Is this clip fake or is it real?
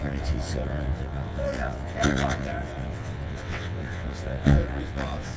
fake